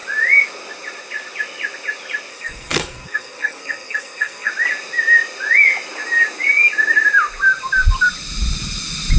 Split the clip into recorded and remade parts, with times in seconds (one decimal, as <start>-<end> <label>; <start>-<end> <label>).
0.0-2.3 recorded; 2.3-4.5 remade; 4.5-9.2 recorded